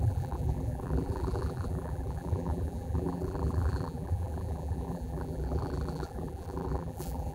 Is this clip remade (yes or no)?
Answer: yes